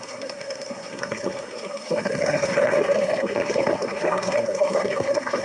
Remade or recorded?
remade